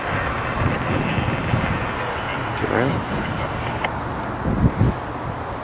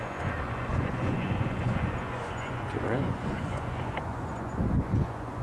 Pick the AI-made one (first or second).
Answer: second